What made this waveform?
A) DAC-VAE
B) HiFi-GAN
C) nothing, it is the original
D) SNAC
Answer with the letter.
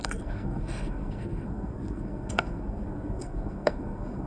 D